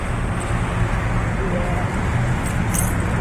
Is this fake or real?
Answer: real